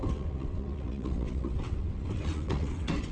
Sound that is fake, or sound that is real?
fake